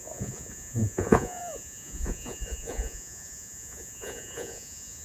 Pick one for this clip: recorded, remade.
remade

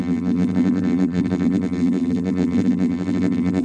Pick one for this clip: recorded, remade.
remade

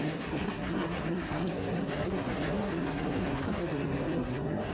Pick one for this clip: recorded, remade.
remade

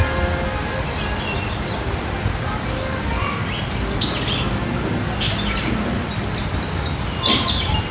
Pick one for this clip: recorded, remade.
recorded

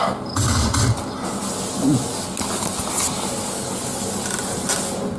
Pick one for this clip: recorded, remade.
recorded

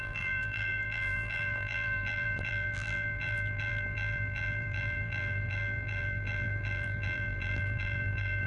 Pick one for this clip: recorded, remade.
remade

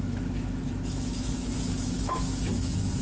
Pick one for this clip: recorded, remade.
remade